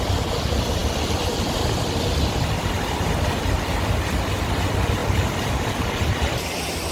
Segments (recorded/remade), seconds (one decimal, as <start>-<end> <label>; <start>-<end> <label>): 0.0-0.8 recorded; 0.8-3.7 remade; 3.7-5.0 recorded; 5.0-6.9 remade